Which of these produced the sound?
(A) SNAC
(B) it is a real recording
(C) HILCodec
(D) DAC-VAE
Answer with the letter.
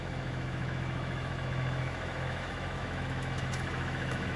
D